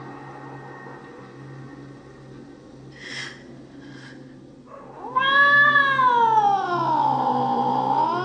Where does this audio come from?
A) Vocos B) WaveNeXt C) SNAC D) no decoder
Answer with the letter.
D